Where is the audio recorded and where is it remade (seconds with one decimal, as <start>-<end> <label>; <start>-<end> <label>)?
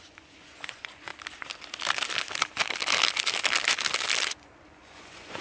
0.0-1.1 remade; 1.1-4.3 recorded; 4.3-5.4 remade